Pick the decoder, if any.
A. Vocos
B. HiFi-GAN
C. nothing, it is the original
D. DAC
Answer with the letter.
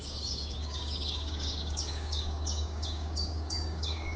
D